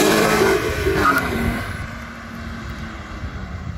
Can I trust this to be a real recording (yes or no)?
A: no